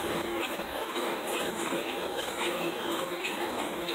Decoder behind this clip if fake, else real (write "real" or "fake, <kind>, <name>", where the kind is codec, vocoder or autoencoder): fake, codec, DAC